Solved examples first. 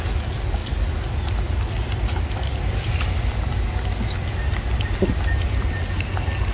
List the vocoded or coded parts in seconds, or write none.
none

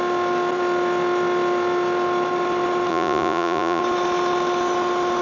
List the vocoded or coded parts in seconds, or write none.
2.9-3.8 (vocoder, Vocos)